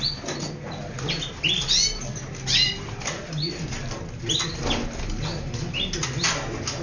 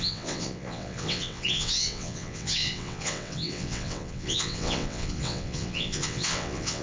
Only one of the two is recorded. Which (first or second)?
first